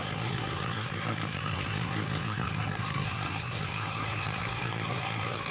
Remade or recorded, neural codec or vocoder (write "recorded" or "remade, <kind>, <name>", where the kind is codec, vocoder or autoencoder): remade, codec, SNAC